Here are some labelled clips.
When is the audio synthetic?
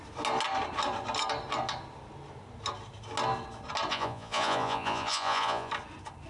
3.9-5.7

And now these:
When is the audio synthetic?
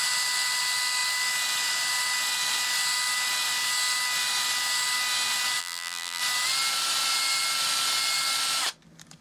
5.6-6.2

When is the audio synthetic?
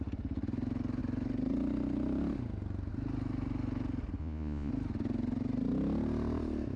4.2-4.7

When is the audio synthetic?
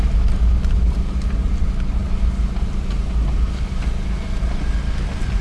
none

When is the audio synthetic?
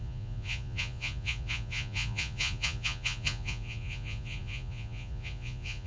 0.0-5.9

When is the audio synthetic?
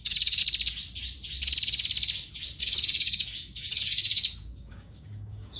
0.0-0.4; 2.6-5.6